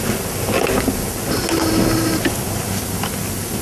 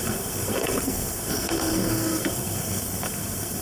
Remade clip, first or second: second